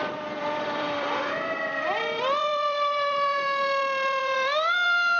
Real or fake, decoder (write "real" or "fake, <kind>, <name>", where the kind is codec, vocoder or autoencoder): fake, vocoder, BigVGAN v2